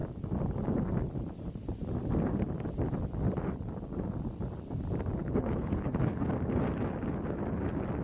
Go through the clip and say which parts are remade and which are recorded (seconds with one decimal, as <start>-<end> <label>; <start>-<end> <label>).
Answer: 0.0-5.2 recorded; 5.2-6.3 remade; 6.3-8.0 recorded